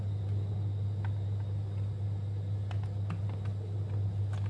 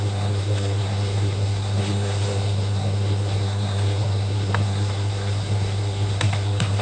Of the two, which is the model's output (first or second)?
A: second